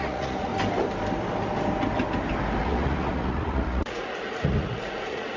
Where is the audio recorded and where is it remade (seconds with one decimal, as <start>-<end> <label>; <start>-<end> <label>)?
0.0-0.5 remade; 0.5-2.6 recorded; 2.6-5.4 remade